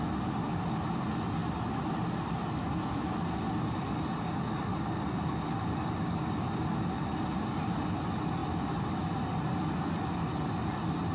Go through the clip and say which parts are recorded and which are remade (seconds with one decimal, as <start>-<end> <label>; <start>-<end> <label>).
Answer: 0.0-1.4 recorded; 1.4-2.3 remade; 2.3-4.7 recorded; 4.7-5.3 remade; 5.3-11.1 recorded